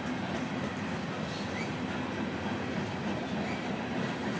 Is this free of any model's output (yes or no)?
yes